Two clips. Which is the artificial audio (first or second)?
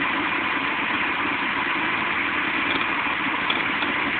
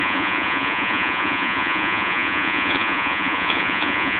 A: second